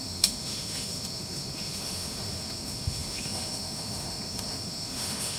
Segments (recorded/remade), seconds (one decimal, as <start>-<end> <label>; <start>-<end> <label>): 0.0-5.4 remade